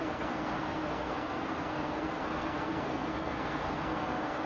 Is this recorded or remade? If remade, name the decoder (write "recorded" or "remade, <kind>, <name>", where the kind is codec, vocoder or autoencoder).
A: remade, codec, SNAC